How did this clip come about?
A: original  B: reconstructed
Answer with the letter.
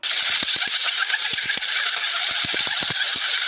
A